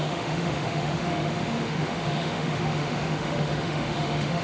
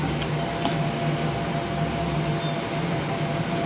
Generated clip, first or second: first